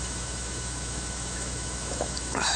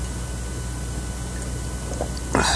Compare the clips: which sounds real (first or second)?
second